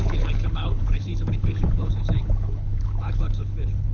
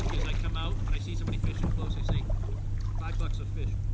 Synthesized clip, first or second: first